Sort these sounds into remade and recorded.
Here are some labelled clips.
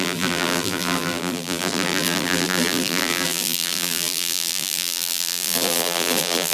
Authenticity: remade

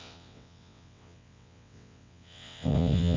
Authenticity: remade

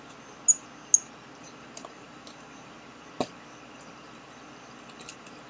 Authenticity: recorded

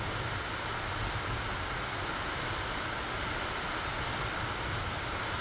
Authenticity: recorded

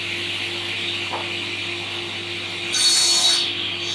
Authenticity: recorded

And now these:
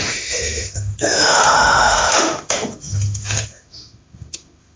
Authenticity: remade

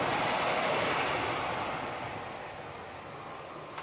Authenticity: recorded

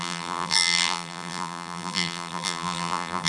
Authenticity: remade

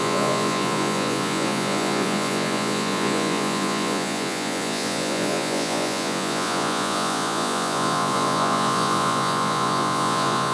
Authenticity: remade